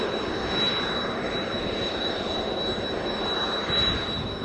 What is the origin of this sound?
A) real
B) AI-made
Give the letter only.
A